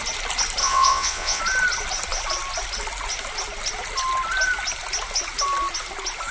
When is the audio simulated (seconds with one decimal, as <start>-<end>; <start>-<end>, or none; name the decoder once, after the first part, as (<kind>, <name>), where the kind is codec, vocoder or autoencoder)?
0.6-1.4 (vocoder, WaveNeXt)